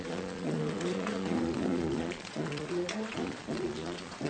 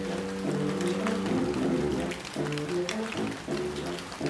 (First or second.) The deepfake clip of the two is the first